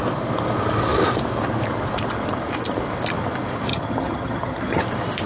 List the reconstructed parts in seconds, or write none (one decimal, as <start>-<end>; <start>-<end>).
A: 3.7-4.8